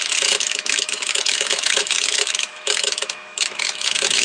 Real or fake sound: fake